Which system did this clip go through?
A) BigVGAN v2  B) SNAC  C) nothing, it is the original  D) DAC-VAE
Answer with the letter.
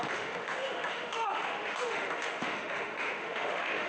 D